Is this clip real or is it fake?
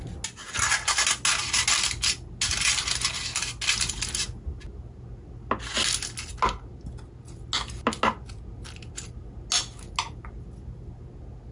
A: real